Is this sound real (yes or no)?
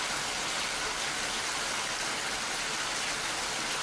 yes